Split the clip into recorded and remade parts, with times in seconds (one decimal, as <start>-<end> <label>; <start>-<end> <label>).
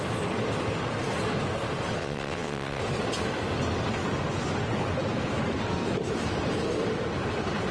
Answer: 0.0-2.0 recorded; 2.0-2.8 remade; 2.8-7.7 recorded